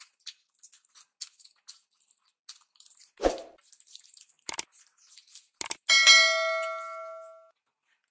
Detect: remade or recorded recorded